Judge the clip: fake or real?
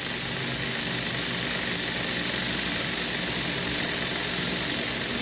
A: real